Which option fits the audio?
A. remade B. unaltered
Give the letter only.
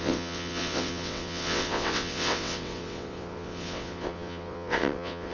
A